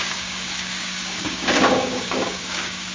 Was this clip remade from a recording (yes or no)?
yes